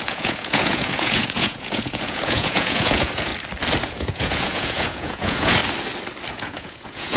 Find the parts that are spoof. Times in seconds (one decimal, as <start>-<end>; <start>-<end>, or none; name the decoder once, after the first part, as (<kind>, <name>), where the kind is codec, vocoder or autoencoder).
0.0-3.3 (vocoder, Vocos); 3.8-5.6; 6.3-7.2